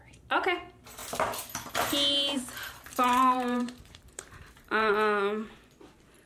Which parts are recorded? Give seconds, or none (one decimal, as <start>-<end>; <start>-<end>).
0.0-2.6; 4.9-6.3